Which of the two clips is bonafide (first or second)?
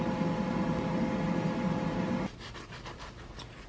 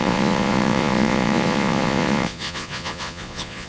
first